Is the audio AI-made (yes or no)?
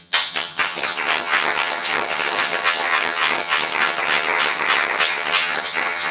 yes